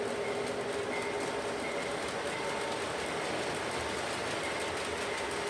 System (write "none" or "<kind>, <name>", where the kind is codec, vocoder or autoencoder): none